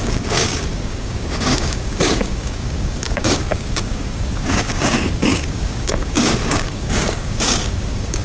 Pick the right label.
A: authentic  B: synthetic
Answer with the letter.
B